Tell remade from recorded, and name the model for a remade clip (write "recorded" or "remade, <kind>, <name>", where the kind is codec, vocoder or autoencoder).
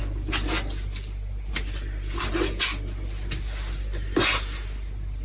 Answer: recorded